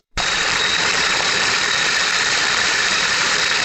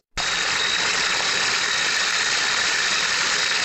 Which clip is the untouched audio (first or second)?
second